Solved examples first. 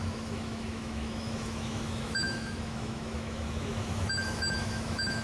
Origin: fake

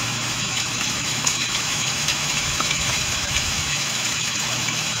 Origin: fake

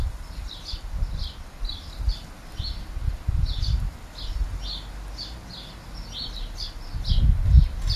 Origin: real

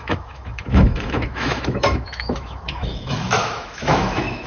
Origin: fake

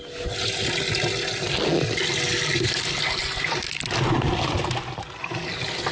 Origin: real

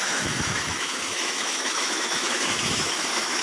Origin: fake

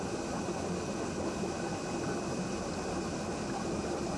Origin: real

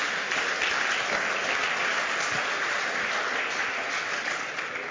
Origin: real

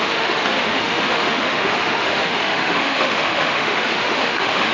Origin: fake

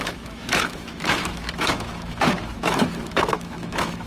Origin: fake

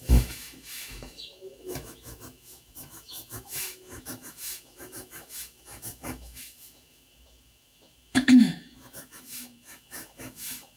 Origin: fake